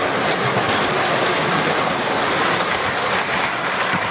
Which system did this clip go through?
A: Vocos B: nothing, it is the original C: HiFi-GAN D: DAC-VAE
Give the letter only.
B